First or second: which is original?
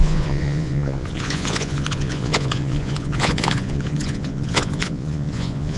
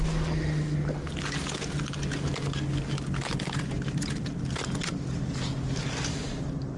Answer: second